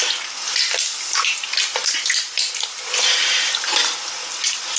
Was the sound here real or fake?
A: real